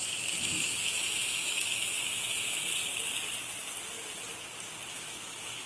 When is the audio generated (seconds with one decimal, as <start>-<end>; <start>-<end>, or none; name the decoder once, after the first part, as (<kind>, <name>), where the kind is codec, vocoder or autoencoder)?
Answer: 0.0-2.8 (autoencoder, DAC-VAE); 4.9-5.7